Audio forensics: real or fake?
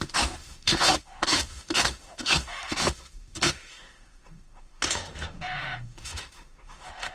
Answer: fake